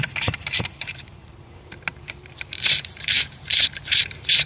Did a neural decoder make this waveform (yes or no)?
yes